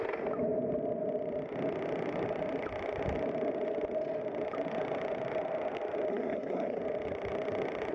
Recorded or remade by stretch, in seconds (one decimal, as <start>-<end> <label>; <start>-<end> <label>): 0.0-6.1 recorded; 6.1-6.8 remade; 6.8-7.9 recorded